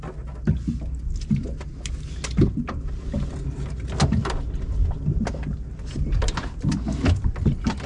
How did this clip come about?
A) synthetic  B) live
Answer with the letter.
B